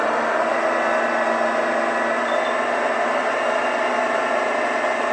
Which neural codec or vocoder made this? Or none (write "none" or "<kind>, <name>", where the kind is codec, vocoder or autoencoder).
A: none